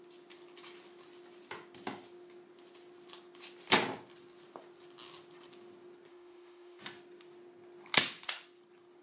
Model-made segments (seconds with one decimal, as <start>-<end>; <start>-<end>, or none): 6.1-6.8